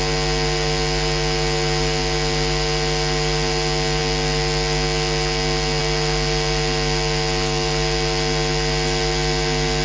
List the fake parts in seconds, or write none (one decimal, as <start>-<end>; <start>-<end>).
none